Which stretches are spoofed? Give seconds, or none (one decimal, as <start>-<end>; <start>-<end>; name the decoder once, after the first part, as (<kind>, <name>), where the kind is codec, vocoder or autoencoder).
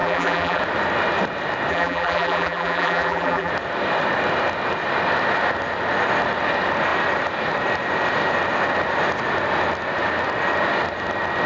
0.0-0.6 (vocoder, BigVGAN v2); 1.7-3.5